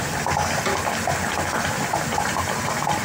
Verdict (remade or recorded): remade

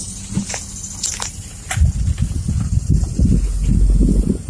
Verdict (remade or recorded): recorded